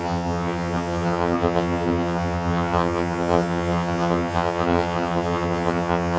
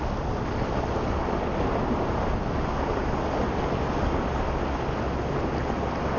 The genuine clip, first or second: second